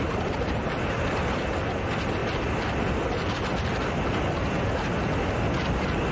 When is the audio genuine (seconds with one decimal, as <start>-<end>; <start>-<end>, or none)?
0.6-1.2; 2.2-5.4